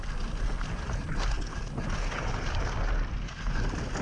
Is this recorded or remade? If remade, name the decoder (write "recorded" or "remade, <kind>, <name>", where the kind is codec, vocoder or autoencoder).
recorded